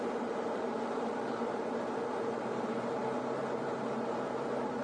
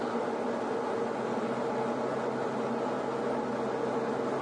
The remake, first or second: first